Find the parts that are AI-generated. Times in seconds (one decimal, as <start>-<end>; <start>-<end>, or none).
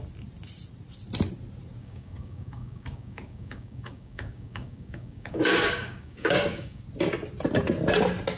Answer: 1.8-6.8